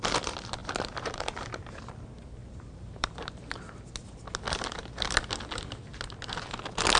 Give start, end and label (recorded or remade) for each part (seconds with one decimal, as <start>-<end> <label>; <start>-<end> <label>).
0.0-0.6 recorded; 0.6-1.8 remade; 1.8-2.4 recorded; 2.4-3.5 remade; 3.5-7.0 recorded